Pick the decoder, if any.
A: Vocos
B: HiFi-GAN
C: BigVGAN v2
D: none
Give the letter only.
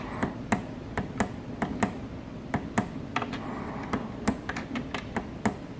D